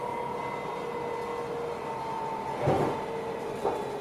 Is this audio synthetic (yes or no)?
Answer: no